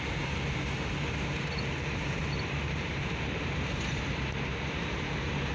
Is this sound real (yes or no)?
no